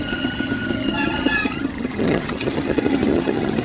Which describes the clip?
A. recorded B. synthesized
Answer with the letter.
B